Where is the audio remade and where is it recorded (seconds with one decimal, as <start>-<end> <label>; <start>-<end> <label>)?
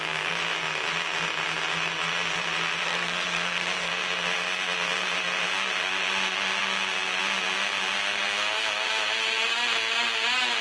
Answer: 0.0-2.8 recorded; 2.8-3.9 remade; 3.9-10.6 recorded